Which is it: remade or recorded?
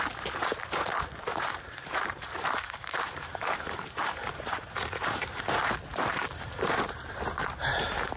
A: remade